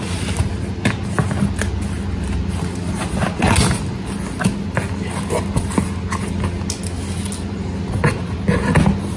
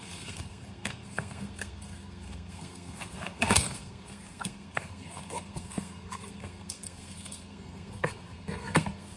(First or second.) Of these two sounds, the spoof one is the second